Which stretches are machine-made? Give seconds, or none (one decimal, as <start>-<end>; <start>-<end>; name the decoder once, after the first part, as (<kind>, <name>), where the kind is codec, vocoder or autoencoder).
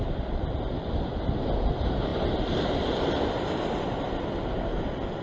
none